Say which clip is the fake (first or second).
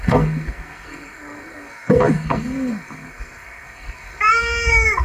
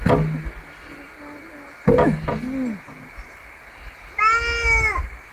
first